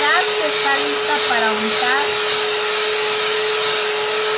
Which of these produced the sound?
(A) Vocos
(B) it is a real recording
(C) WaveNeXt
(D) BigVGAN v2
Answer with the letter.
B